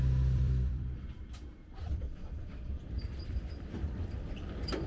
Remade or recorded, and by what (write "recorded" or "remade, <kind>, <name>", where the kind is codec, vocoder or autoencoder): remade, vocoder, BigVGAN v2